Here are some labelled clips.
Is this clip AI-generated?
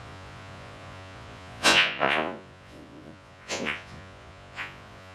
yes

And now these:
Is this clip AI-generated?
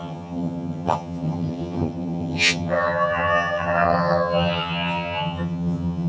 yes